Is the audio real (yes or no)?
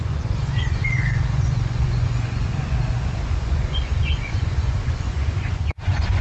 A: no